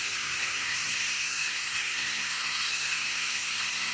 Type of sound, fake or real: fake